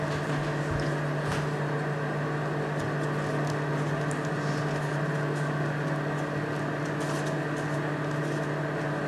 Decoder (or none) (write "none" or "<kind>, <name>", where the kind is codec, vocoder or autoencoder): none